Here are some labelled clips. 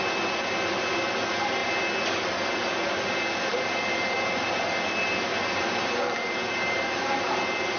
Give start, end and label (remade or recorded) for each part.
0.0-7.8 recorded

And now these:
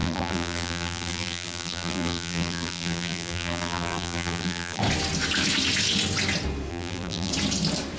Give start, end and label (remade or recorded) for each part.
0.0-4.8 remade; 4.8-6.7 recorded; 6.7-7.3 remade; 7.3-8.0 recorded

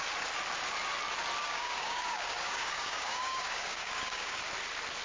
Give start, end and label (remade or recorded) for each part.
0.0-1.4 recorded; 1.4-4.4 remade; 4.4-5.0 recorded

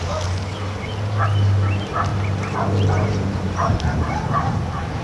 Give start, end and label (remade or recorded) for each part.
0.0-2.1 recorded; 2.1-4.6 remade; 4.6-5.0 recorded

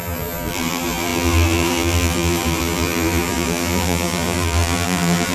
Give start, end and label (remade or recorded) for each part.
0.0-5.3 remade

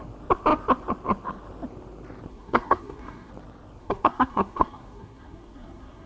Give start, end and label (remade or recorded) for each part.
0.0-2.3 recorded; 2.3-3.3 remade; 3.3-3.8 recorded; 3.8-6.1 remade

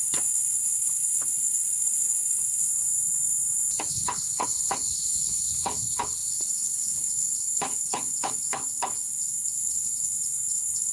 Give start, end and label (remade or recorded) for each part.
0.0-2.7 remade; 2.7-3.9 recorded; 3.9-10.9 remade

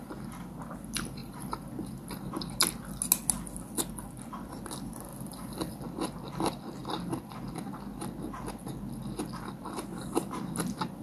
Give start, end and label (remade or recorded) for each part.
0.0-1.2 recorded; 1.2-2.3 remade; 2.3-5.1 recorded; 5.1-5.7 remade; 5.7-11.0 recorded